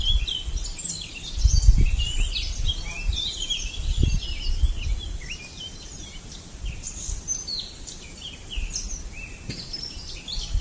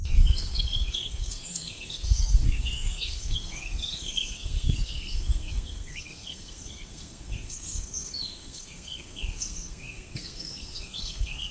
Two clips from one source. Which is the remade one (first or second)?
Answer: second